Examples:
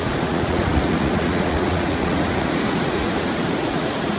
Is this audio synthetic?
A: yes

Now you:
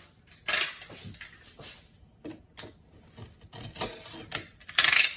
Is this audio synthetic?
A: no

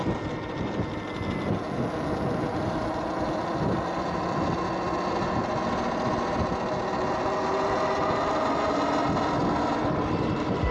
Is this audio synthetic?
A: no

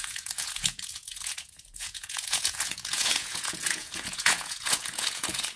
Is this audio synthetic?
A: yes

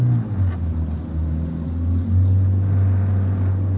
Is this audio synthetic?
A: no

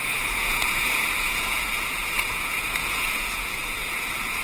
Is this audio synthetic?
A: yes